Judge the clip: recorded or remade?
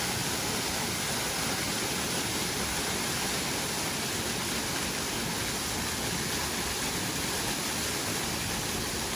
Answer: recorded